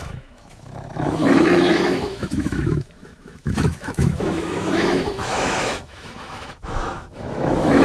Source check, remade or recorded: remade